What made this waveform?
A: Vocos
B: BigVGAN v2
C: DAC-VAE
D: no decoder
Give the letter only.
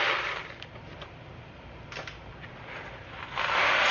D